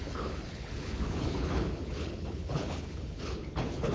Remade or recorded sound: remade